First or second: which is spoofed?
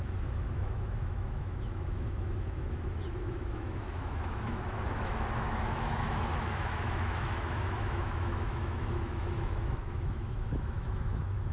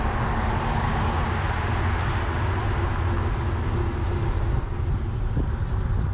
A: first